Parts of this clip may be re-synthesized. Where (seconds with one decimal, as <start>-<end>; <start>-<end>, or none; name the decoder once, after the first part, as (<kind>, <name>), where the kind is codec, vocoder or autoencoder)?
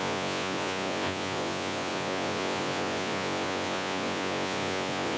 0.0-5.2 (vocoder, Vocos)